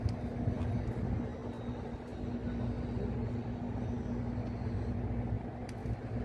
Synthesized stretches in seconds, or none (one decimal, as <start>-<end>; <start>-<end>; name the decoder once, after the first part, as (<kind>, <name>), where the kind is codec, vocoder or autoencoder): none